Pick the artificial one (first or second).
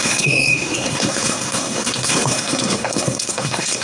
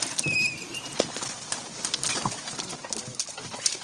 first